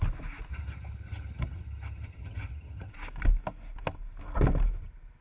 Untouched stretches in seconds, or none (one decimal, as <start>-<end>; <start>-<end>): 0.0-0.5; 2.9-5.2